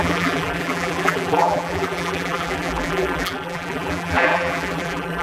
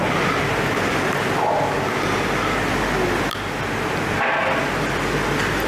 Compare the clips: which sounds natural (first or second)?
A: second